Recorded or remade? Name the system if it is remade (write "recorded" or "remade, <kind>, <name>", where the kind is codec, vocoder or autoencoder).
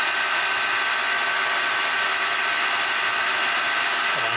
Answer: recorded